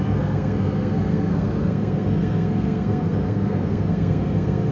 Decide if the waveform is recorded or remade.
remade